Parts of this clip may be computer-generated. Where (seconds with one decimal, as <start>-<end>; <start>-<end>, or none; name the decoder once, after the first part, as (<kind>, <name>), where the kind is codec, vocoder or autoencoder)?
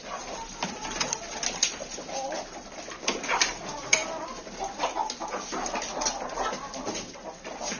none